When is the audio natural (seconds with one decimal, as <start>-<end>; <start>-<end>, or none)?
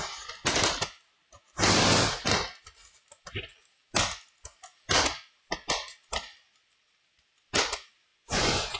0.0-8.1